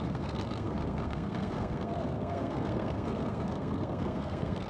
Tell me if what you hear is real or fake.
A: fake